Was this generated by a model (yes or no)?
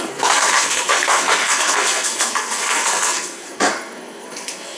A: yes